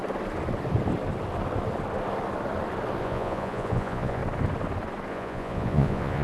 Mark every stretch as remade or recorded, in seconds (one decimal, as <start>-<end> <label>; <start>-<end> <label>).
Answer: 0.0-3.0 recorded; 3.0-4.2 remade; 4.2-5.1 recorded; 5.1-6.2 remade